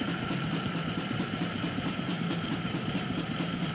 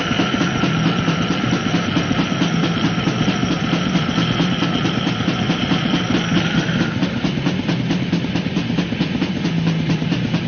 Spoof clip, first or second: first